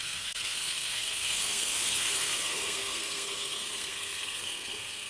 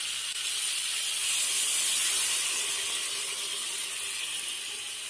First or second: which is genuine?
second